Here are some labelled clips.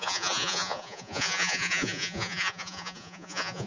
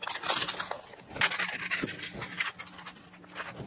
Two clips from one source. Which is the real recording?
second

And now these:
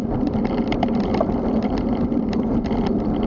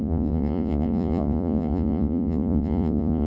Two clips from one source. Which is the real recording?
first